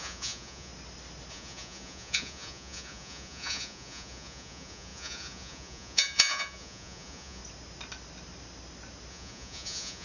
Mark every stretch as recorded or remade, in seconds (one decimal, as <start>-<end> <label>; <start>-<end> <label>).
0.0-0.7 remade; 0.7-1.3 recorded; 1.3-7.4 remade; 7.4-9.1 recorded; 9.1-10.0 remade